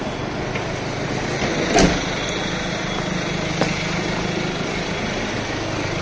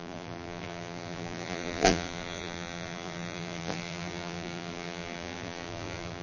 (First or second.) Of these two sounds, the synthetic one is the second